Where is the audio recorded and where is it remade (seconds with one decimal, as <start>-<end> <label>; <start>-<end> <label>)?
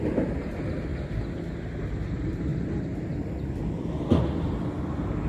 0.0-0.9 remade; 0.9-1.5 recorded; 1.5-2.5 remade; 2.5-5.3 recorded